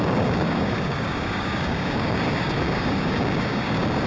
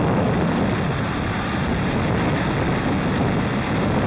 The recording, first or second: second